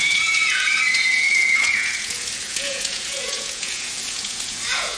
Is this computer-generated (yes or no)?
yes